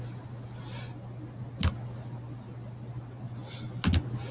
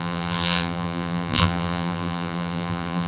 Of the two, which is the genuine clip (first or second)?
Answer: first